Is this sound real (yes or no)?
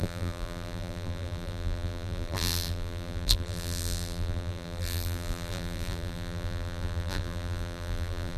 no